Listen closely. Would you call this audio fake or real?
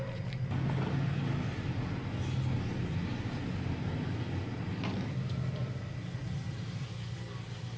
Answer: real